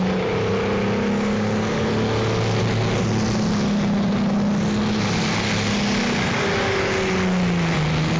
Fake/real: real